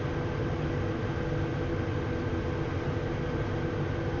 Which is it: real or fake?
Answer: real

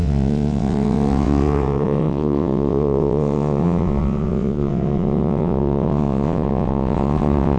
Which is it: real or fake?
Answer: fake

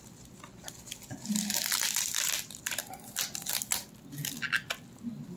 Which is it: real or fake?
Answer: real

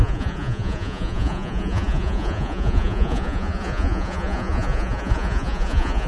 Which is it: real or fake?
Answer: fake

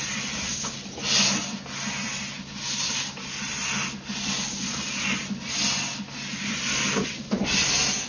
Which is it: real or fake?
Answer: real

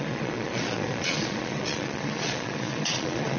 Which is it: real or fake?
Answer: fake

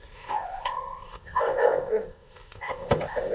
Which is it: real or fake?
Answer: fake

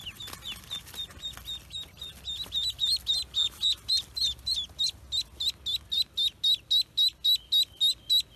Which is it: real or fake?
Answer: real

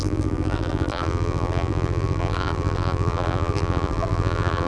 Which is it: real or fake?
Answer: fake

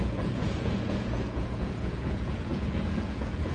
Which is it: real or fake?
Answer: fake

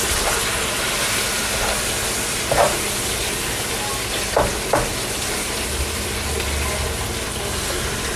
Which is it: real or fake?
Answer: real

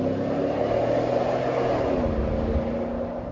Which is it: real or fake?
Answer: real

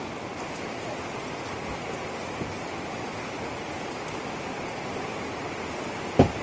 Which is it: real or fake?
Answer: real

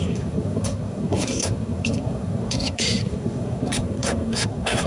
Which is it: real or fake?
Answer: fake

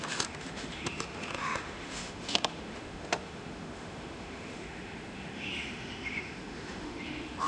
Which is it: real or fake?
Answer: fake